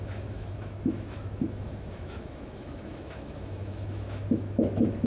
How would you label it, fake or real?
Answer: fake